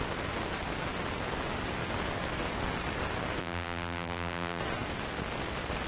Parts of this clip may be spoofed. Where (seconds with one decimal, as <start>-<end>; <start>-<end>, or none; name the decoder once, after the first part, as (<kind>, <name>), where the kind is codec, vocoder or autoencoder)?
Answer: 3.4-4.6 (vocoder, BigVGAN v2)